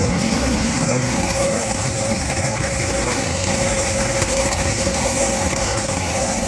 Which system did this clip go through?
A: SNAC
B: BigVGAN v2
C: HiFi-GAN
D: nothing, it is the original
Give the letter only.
A